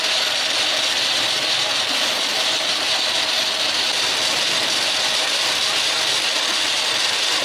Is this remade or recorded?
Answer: recorded